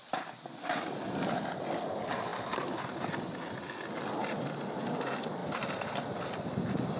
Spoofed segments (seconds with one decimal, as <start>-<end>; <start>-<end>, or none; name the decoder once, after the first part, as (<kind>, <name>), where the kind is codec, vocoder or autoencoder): none